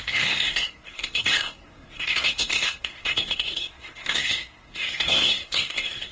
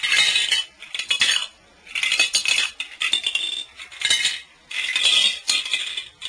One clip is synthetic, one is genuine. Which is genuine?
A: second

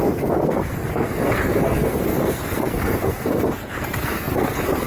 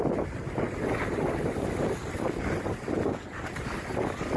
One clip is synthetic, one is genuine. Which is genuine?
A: second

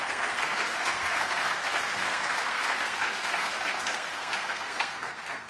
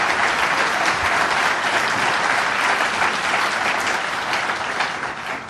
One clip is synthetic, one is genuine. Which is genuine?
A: second